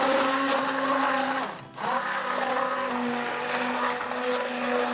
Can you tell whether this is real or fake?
real